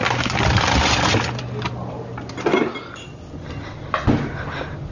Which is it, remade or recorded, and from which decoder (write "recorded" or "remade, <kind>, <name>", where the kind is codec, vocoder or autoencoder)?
recorded